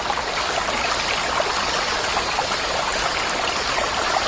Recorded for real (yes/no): yes